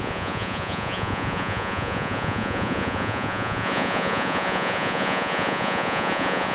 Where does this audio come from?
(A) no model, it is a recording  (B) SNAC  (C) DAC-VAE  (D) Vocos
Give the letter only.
D